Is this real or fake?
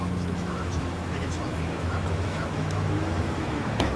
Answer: fake